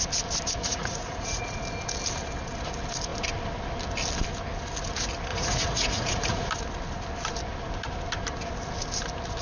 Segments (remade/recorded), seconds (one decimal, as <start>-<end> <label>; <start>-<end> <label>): 0.0-0.6 recorded; 0.6-1.6 remade; 1.6-5.3 recorded; 5.3-6.5 remade; 6.5-9.4 recorded